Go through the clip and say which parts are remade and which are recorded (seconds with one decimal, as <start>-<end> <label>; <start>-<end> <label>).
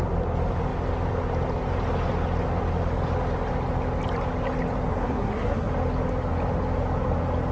0.0-4.9 recorded; 4.9-5.7 remade; 5.7-7.5 recorded